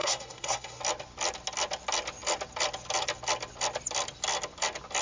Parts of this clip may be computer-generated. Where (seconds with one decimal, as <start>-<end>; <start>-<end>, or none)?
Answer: 0.0-0.8